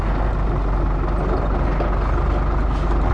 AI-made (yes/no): no